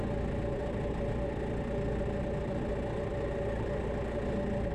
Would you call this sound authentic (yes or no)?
yes